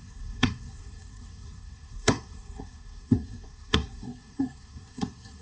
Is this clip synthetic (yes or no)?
yes